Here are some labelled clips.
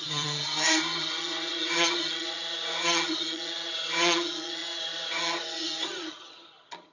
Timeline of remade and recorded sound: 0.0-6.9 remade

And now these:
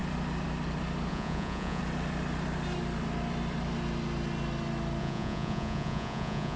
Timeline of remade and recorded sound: 0.0-1.1 recorded; 1.1-1.8 remade; 1.8-5.0 recorded; 5.0-6.6 remade

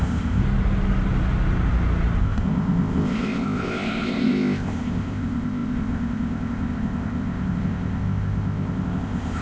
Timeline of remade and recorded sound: 0.0-0.4 remade; 0.4-2.2 recorded; 2.2-9.4 remade

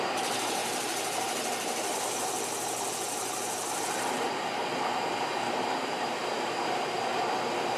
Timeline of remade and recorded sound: 0.0-4.6 remade; 4.6-5.8 recorded; 5.8-7.8 remade